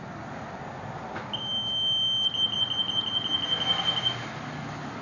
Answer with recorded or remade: recorded